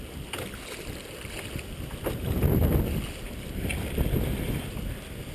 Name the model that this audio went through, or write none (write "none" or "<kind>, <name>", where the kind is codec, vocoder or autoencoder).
none